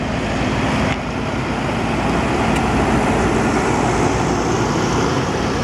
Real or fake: real